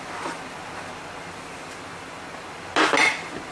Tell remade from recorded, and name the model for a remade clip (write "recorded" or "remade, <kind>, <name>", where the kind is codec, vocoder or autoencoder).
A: recorded